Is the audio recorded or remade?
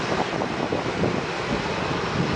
recorded